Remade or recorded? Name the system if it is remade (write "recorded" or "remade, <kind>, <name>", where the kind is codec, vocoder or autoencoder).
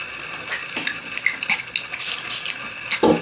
recorded